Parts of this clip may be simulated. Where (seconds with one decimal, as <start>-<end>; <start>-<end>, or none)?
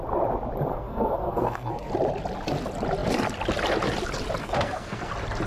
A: 0.7-1.9; 4.4-5.1